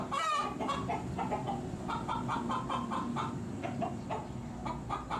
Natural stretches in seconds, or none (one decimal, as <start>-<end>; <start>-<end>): 0.0-5.2